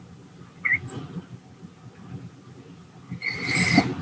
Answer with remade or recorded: recorded